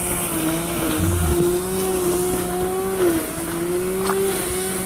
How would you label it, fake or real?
real